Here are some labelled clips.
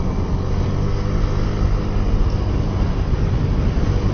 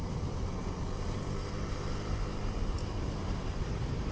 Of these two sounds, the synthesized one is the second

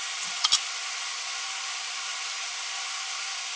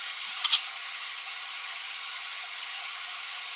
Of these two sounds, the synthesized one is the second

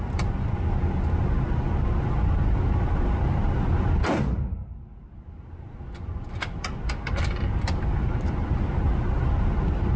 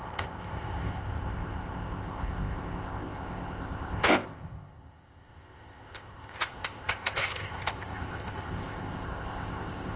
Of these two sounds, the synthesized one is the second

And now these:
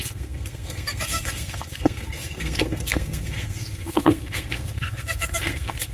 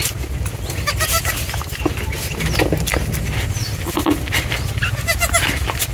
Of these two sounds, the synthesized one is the first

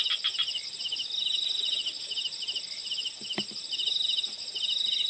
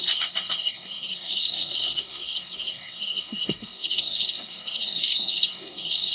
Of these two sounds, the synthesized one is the second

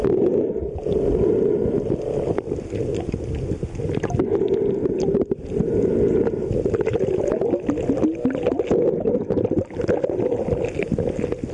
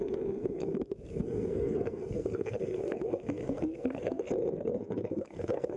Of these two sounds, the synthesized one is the second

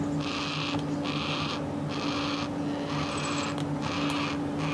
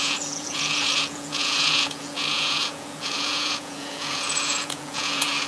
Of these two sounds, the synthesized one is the second